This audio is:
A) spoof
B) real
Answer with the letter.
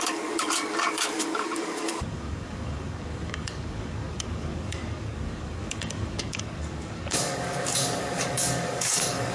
A